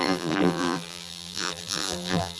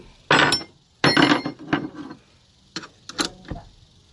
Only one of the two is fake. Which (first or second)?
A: first